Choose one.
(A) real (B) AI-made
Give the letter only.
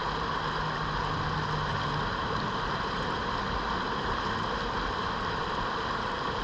A